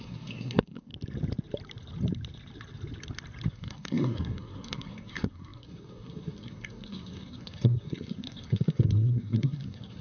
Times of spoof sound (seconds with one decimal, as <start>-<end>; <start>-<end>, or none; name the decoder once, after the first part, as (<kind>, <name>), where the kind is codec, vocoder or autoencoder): 0.0-0.9 (codec, SNAC); 3.5-10.0